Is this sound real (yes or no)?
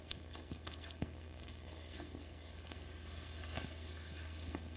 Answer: no